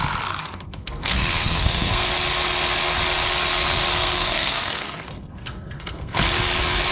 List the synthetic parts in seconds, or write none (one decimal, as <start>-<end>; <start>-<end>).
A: 0.4-2.1; 3.9-6.2